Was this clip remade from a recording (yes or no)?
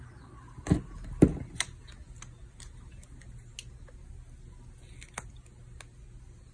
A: no